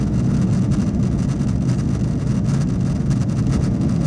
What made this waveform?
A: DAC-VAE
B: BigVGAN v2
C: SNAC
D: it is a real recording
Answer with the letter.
D